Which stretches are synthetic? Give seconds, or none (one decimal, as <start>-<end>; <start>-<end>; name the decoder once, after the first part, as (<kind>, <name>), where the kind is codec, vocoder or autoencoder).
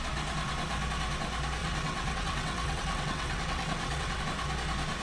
1.6-4.2 (vocoder, WaveNeXt)